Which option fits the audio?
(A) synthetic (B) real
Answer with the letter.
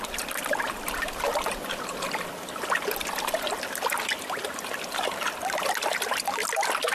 B